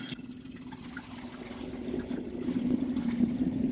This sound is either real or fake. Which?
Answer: real